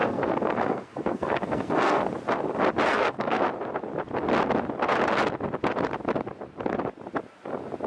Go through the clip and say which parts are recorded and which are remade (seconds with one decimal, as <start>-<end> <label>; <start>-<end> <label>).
0.0-2.0 remade; 2.0-2.9 recorded; 2.9-3.4 remade; 3.4-7.9 recorded